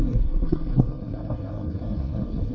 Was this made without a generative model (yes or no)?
no